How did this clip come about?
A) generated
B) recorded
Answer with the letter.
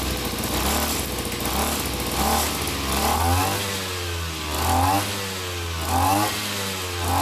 B